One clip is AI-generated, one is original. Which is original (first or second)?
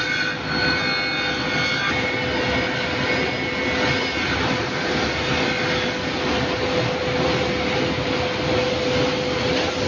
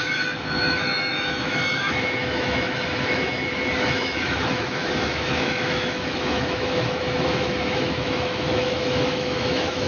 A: first